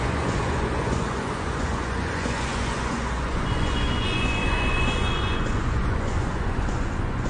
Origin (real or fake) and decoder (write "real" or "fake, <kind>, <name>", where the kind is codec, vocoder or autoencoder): fake, vocoder, Vocos